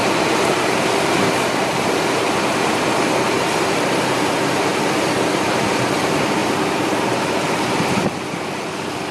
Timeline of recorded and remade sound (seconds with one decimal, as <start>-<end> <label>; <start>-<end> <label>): 0.0-0.7 recorded; 0.7-4.7 remade; 4.7-5.7 recorded; 5.7-9.1 remade